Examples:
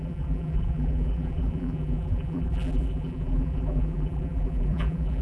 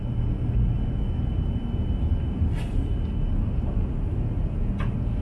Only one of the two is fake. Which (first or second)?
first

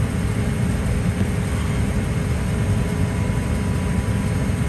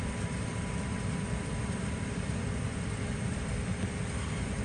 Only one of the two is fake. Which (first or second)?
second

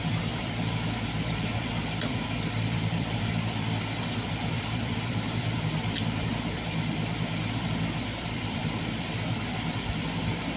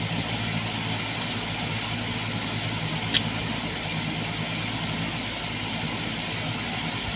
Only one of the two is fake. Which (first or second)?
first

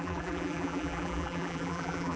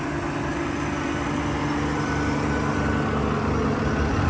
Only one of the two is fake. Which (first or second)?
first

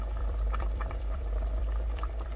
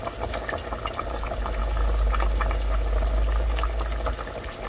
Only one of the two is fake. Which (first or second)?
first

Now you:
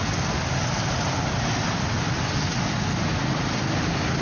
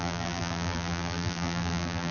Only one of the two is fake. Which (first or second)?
second